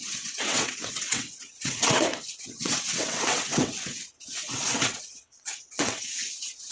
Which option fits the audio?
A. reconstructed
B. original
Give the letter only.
A